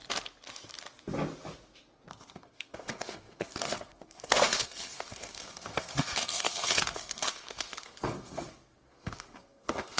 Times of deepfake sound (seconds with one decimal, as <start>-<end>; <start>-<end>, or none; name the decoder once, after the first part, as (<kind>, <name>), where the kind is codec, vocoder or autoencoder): 2.1-10.0 (codec, SNAC)